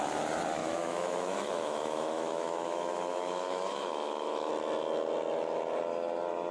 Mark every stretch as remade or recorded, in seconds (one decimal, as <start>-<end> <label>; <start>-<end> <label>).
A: 0.0-0.6 recorded; 0.6-4.5 remade; 4.5-6.5 recorded